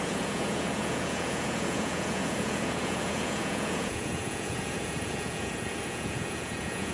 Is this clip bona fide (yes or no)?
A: no